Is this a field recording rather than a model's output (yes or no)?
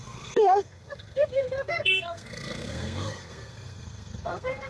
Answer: no